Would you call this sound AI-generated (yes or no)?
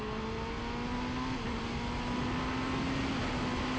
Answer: no